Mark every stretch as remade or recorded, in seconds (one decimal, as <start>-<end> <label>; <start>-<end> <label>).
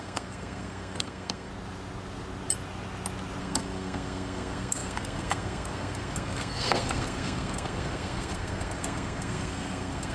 0.0-1.5 remade; 1.5-3.4 recorded; 3.4-10.1 remade